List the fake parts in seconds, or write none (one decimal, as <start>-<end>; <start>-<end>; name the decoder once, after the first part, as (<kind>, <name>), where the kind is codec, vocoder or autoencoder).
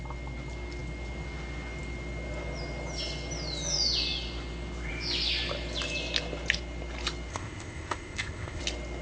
7.3-8.6 (codec, ZipCodec)